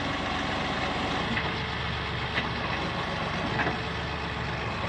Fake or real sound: real